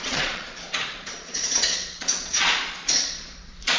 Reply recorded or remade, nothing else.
remade